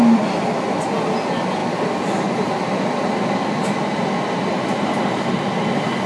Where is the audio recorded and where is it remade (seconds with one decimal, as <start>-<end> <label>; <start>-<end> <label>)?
0.0-6.1 recorded